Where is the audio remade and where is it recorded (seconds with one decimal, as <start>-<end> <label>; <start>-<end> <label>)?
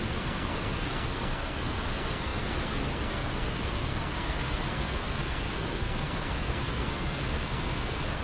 0.0-8.2 remade